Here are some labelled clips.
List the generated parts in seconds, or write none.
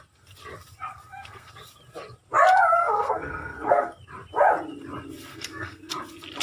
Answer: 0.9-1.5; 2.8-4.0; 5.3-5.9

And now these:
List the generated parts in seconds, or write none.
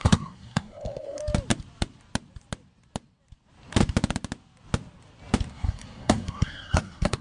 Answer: 0.0-1.2; 5.5-7.2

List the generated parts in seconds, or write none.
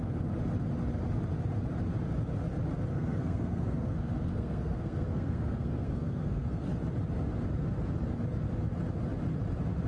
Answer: 2.9-6.7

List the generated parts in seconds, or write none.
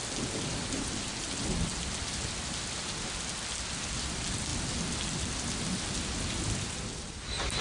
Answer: none